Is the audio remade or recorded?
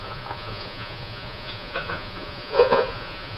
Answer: remade